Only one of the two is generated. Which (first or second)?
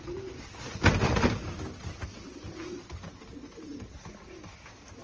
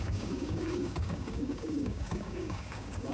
second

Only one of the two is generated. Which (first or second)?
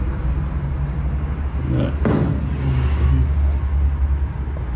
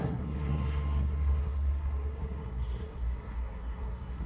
second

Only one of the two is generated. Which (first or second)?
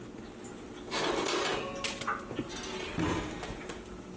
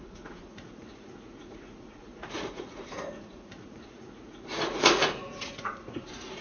second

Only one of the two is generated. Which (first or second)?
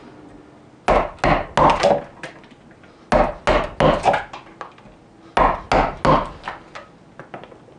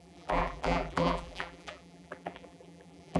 second